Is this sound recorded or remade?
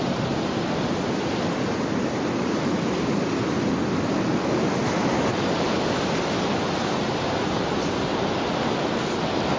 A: recorded